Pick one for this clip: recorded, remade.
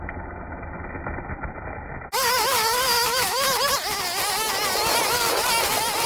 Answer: recorded